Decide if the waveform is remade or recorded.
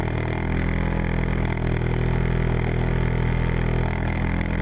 recorded